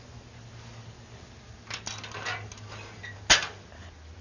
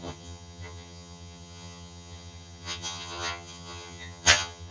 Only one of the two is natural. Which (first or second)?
first